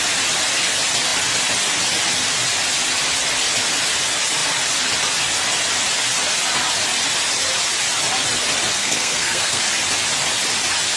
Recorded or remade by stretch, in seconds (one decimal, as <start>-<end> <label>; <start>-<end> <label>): 0.0-8.8 recorded; 8.8-9.6 remade; 9.6-11.0 recorded